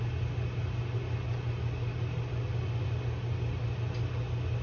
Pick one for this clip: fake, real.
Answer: real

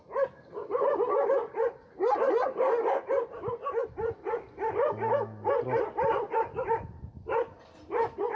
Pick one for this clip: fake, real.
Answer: real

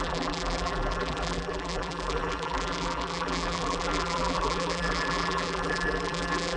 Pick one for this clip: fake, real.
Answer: fake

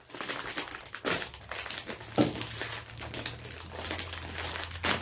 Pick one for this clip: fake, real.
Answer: real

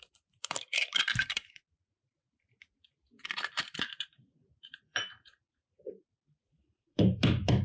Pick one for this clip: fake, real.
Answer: fake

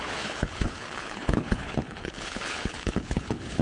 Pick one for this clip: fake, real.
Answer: fake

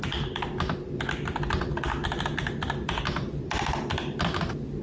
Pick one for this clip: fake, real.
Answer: real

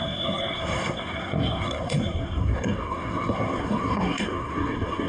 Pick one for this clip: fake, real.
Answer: fake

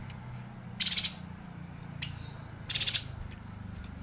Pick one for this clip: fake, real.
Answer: real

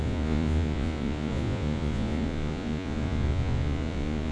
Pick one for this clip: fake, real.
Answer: fake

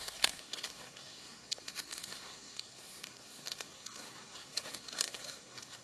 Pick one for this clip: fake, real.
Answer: fake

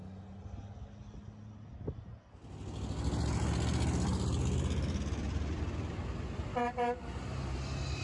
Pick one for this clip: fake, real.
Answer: real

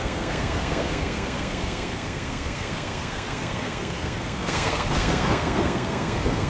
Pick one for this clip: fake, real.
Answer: fake